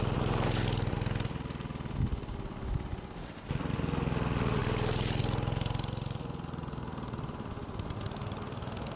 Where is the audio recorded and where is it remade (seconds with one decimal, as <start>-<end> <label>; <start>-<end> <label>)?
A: 0.0-9.0 recorded